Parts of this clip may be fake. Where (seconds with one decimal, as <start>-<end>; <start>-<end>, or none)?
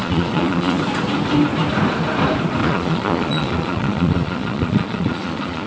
0.0-0.8; 2.6-5.7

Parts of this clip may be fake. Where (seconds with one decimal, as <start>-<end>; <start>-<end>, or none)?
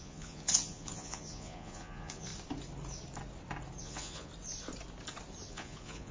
0.0-2.3; 3.8-4.3; 5.5-6.1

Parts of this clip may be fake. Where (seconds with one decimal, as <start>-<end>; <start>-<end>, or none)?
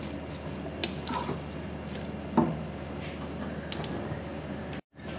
none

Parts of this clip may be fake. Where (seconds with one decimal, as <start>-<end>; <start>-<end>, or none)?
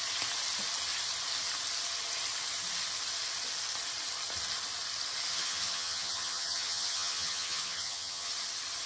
5.3-8.3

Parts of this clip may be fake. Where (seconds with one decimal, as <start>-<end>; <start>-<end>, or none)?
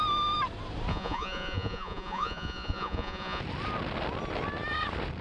0.9-3.4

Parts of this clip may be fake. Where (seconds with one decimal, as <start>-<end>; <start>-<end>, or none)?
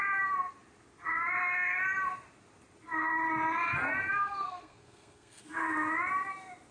4.1-5.4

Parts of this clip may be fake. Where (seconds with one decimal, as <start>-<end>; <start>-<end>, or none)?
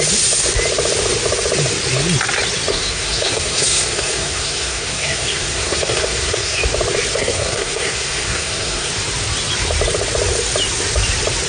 2.7-6.6; 7.1-8.9